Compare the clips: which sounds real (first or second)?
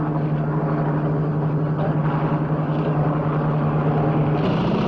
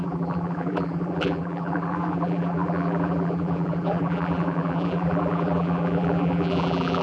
first